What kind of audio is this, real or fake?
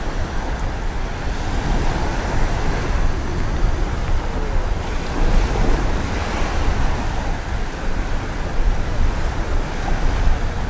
real